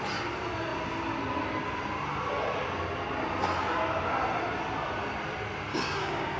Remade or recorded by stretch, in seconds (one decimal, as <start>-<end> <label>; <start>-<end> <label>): 0.0-5.7 recorded; 5.7-6.4 remade